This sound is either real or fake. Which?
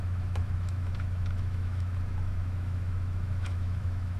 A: fake